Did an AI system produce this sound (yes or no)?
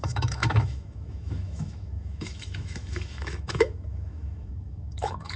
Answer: yes